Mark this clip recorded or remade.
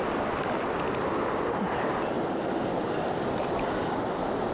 recorded